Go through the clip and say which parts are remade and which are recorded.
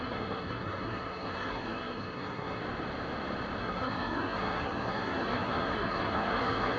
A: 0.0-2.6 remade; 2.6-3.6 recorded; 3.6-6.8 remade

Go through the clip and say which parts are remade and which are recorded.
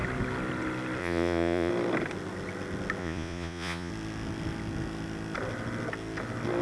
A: 0.0-1.0 recorded; 1.0-1.7 remade; 1.7-3.0 recorded; 3.0-3.9 remade; 3.9-6.6 recorded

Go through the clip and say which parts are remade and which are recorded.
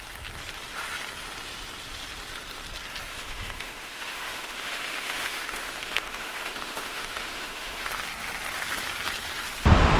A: 0.0-3.1 recorded; 3.1-7.9 remade; 7.9-10.0 recorded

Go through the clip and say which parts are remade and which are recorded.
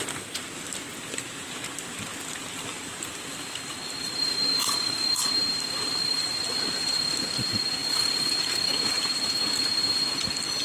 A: 0.0-2.1 recorded; 2.1-4.4 remade; 4.4-5.4 recorded; 5.4-6.2 remade; 6.2-7.8 recorded; 7.8-8.4 remade; 8.4-10.6 recorded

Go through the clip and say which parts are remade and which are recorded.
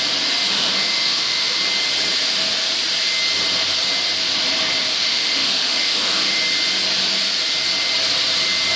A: 0.0-0.5 recorded; 0.5-1.6 remade; 1.6-4.9 recorded; 4.9-6.4 remade; 6.4-8.8 recorded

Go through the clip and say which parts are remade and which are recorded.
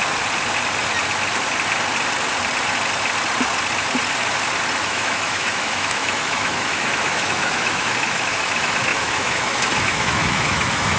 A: 0.0-4.8 recorded; 4.8-11.0 remade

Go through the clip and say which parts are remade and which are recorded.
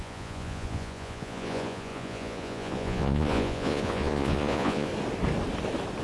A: 0.0-4.9 remade; 4.9-6.0 recorded